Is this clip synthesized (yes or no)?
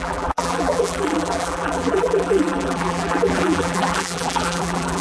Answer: yes